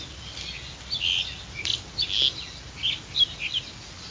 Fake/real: real